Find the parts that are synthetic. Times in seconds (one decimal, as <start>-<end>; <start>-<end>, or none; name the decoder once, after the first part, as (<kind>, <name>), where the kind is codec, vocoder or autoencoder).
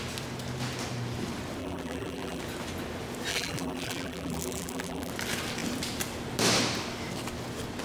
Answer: 1.6-2.4 (vocoder, BigVGAN v2); 3.3-5.1